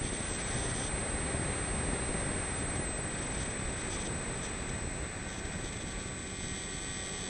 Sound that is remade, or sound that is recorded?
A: recorded